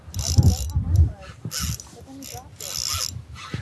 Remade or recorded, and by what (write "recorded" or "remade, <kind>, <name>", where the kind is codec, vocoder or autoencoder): recorded